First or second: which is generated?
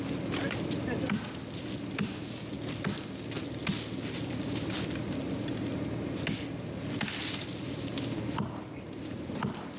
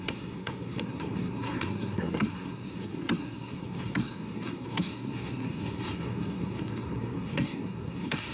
second